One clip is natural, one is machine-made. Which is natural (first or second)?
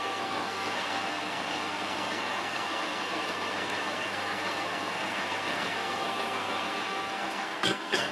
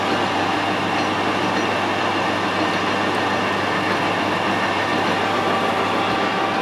second